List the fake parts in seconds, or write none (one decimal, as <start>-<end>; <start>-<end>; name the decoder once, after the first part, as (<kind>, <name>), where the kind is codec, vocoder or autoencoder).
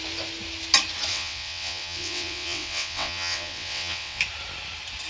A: 1.1-4.2 (vocoder, WaveNeXt)